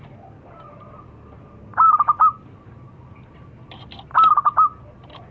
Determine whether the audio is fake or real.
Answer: real